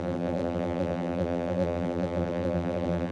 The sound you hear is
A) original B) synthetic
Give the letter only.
B